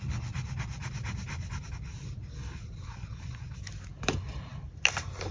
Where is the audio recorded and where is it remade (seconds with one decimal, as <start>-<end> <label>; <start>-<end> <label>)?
0.0-5.3 recorded